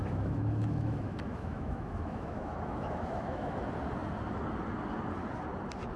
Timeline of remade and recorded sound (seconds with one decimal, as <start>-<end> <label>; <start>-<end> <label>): 0.0-3.6 remade; 3.6-6.0 recorded